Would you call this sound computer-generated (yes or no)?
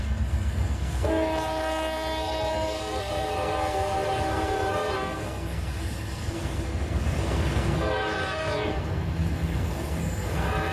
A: yes